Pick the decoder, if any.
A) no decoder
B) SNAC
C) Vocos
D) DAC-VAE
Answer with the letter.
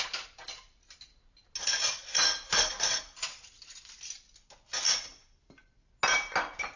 A